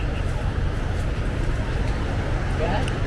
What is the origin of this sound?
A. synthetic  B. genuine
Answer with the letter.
B